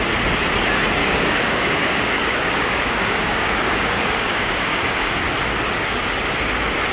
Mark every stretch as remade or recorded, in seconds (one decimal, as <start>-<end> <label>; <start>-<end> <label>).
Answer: 0.0-1.0 recorded; 1.0-5.1 remade; 5.1-6.9 recorded